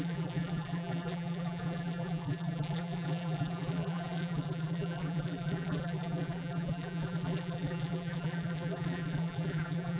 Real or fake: fake